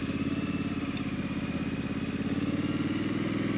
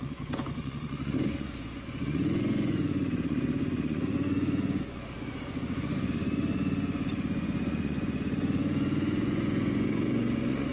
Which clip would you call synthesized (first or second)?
second